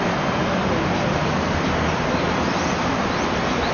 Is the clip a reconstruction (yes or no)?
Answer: no